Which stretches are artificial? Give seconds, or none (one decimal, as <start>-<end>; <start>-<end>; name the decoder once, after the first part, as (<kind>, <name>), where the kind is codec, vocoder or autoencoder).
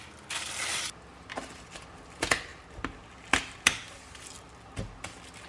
none